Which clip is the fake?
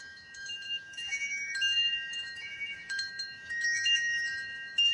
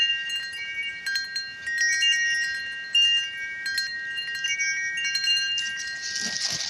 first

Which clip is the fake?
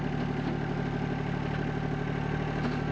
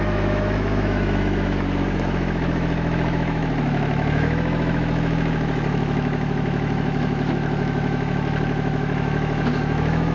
second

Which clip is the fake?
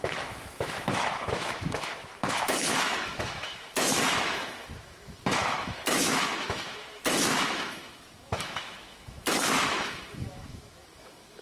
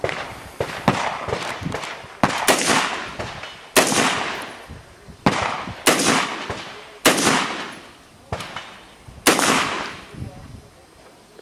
first